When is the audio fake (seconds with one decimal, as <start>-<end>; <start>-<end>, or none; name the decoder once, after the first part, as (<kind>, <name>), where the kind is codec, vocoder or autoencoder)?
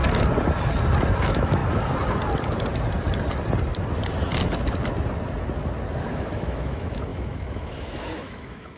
1.2-1.6 (autoencoder, DAC-VAE); 6.1-8.8